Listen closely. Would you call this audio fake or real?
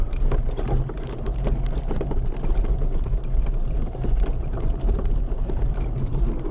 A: fake